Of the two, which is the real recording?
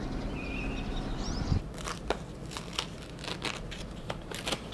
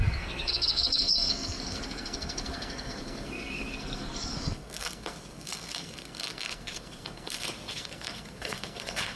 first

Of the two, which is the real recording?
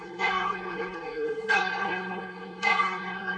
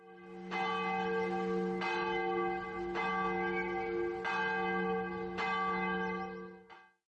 second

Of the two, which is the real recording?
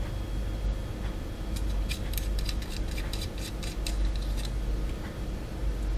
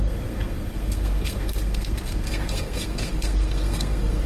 first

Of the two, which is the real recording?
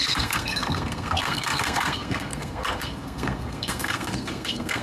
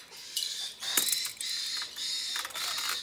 second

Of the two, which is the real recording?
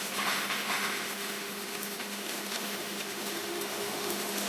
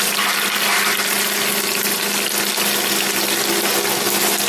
second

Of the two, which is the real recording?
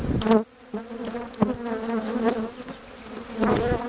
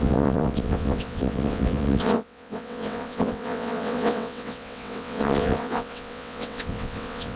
first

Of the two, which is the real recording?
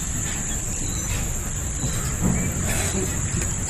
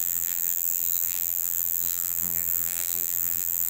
first